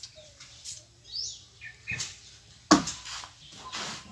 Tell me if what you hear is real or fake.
real